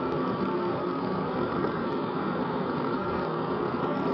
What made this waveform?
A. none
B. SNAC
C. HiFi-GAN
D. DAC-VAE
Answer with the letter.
B